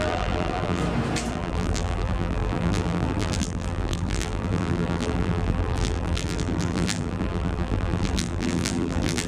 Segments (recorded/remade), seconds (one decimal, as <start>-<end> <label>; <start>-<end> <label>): 0.0-0.8 remade; 0.8-1.3 recorded; 1.3-9.3 remade